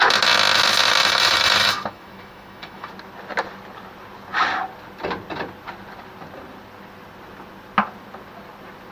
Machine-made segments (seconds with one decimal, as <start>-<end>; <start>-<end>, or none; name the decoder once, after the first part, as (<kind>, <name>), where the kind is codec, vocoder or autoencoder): 1.0-2.9 (autoencoder, DAC-VAE)